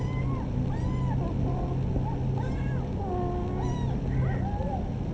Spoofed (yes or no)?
no